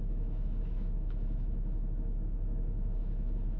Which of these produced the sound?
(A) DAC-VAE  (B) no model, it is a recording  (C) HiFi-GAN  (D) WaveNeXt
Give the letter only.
A